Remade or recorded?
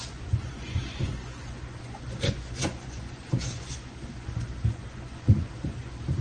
remade